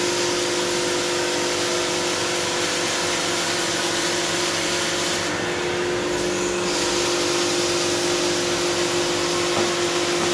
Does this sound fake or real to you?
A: real